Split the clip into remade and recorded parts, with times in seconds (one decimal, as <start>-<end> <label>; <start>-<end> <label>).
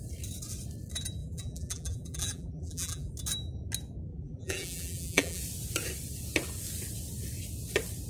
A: 0.0-1.2 recorded; 1.2-3.1 remade; 3.1-4.1 recorded; 4.1-5.4 remade; 5.4-8.1 recorded